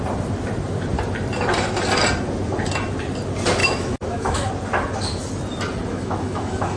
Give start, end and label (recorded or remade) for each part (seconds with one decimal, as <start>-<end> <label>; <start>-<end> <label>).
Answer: 0.0-3.6 recorded; 3.6-4.5 remade; 4.5-5.9 recorded; 5.9-6.8 remade